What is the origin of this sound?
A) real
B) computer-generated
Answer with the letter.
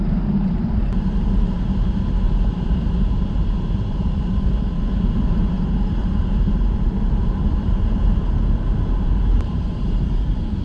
B